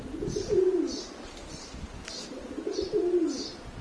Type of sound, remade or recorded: recorded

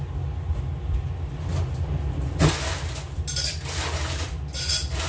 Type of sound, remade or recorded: recorded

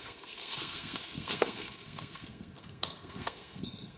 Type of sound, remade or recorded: remade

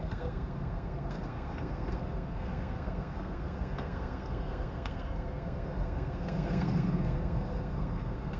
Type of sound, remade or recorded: remade